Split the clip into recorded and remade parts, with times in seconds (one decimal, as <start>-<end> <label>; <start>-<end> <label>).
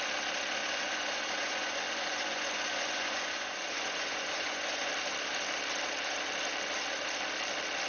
0.0-0.6 recorded; 0.6-4.9 remade; 4.9-7.9 recorded